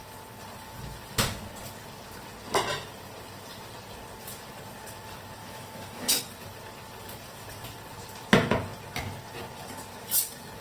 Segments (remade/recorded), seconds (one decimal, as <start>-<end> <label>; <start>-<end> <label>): 0.0-5.4 recorded; 5.4-6.2 remade; 6.2-10.6 recorded